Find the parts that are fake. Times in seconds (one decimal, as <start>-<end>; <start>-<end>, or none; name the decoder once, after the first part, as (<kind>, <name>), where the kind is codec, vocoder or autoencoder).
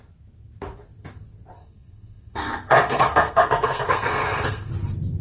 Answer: 1.6-4.7 (codec, SNAC)